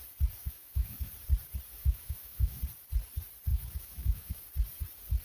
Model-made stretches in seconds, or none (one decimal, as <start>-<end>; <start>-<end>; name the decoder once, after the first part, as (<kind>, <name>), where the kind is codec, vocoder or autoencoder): 0.4-1.1 (autoencoder, DAC-VAE); 1.8-2.6; 3.5-4.4